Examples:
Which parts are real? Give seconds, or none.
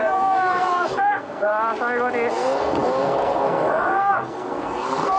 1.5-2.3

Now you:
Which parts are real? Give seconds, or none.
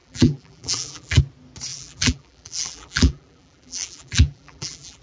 1.2-1.7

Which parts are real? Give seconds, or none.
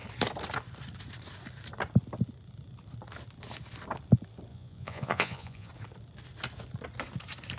0.0-4.5; 5.7-7.6